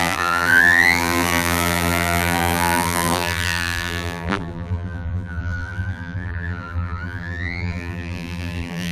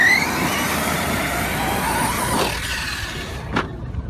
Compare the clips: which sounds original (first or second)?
second